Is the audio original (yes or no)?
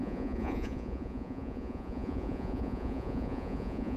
no